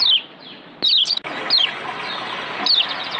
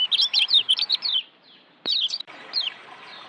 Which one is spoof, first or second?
second